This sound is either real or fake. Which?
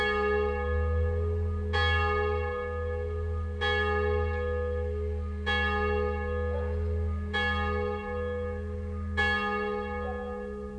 real